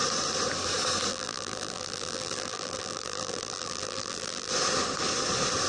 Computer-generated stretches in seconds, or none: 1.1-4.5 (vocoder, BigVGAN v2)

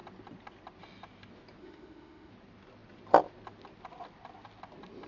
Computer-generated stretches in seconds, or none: 1.6-2.3 (autoencoder, DAC-VAE)

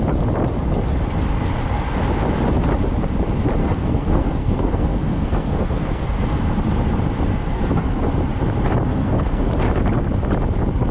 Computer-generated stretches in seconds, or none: 3.6-6.2 (codec, SNAC); 7.4-8.0; 8.9-9.5

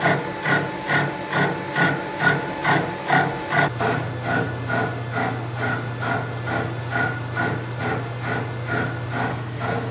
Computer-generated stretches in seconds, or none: 9.3-9.9 (codec, SNAC)

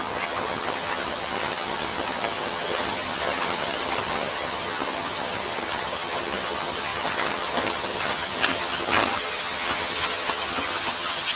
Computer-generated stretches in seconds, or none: 0.0-11.4 (vocoder, HiFi-GAN)